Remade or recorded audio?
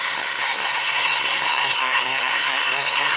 remade